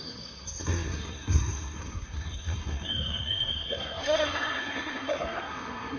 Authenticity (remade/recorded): remade